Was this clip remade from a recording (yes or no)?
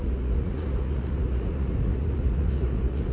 yes